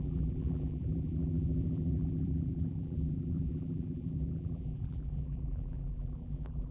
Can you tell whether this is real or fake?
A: fake